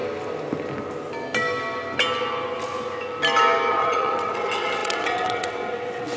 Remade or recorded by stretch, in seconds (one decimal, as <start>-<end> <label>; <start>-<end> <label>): 0.0-3.7 recorded; 3.7-6.2 remade